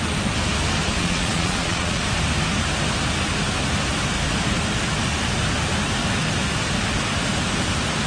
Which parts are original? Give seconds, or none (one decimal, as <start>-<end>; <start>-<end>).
0.0-1.0; 2.0-8.1